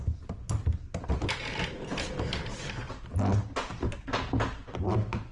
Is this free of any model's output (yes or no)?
yes